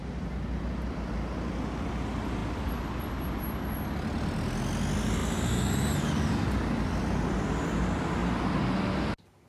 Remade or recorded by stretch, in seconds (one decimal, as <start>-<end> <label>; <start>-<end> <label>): 0.0-5.2 recorded; 5.2-6.6 remade; 6.6-9.5 recorded